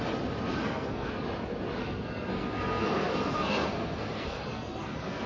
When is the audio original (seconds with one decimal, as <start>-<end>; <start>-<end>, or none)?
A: 0.0-0.6; 1.1-1.8